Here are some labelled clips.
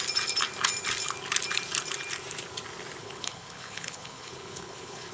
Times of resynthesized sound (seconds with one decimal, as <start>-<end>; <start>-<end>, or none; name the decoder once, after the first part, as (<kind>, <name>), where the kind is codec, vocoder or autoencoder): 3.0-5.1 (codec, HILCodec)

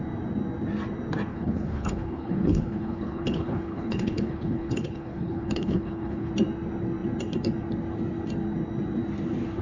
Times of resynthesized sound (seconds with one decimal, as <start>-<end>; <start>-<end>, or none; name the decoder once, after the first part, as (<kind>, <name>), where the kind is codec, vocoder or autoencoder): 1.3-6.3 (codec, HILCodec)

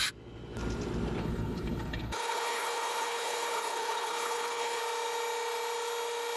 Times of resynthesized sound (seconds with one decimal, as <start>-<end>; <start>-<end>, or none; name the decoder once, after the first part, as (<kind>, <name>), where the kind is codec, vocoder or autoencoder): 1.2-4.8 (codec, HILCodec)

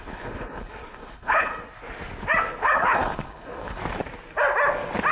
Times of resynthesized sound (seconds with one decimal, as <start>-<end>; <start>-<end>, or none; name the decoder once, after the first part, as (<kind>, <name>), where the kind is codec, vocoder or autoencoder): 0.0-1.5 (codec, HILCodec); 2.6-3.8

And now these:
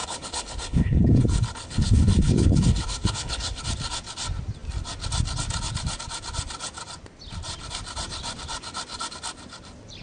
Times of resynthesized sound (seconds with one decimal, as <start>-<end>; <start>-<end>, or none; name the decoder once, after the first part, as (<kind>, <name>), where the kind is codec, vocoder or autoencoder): 0.0-3.6 (codec, HILCodec)

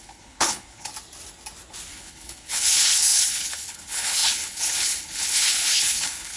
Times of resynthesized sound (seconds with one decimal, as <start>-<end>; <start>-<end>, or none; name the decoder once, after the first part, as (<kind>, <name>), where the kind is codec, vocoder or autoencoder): 0.0-0.9 (codec, HILCodec); 1.9-6.4

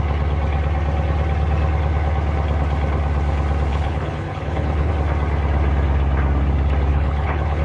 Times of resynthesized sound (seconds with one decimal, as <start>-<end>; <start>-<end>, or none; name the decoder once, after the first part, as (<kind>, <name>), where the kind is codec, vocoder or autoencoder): 3.7-4.9 (codec, HILCodec); 6.9-7.6